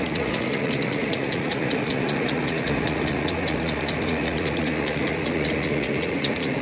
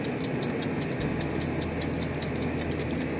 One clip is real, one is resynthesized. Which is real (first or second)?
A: second